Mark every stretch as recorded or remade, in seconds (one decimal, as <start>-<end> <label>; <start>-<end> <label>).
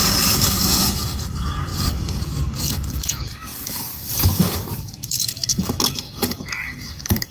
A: 0.0-7.3 remade